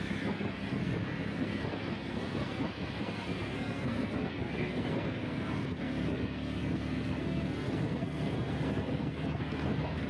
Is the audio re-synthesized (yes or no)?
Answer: yes